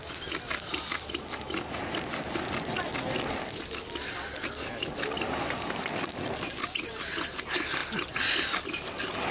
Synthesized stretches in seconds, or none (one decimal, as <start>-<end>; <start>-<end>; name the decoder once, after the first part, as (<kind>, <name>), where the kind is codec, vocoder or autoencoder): none